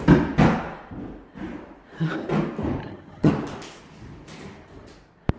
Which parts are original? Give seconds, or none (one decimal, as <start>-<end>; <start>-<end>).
0.0-2.8; 3.3-5.4